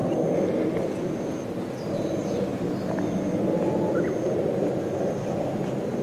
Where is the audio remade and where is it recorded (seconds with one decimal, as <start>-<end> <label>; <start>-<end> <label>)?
0.0-6.0 recorded